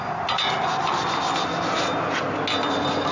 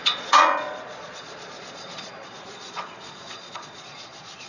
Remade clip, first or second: second